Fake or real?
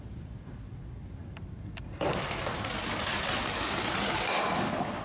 real